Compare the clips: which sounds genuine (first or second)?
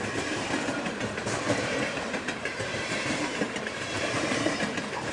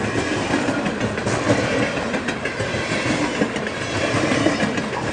second